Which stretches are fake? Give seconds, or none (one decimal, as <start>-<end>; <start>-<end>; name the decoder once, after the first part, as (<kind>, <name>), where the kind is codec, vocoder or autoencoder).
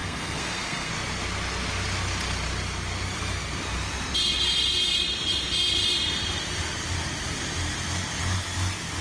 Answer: 0.0-0.9 (codec, SNAC)